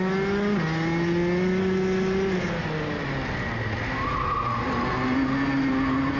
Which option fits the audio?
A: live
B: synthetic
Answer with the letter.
A